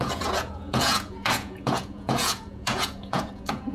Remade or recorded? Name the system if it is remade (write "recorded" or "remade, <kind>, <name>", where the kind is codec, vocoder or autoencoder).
remade, vocoder, Vocos